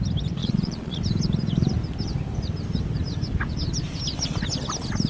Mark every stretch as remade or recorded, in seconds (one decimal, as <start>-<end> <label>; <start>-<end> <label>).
0.0-0.4 recorded; 0.4-1.0 remade; 1.0-5.1 recorded